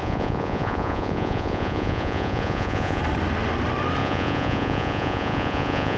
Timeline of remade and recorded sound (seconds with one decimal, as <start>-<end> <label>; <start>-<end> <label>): 0.0-3.0 remade; 3.0-4.0 recorded; 4.0-6.0 remade

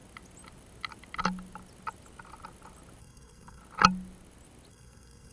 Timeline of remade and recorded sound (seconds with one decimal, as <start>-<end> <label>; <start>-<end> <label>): 0.0-3.0 recorded; 3.0-3.6 remade; 3.6-4.7 recorded; 4.7-5.3 remade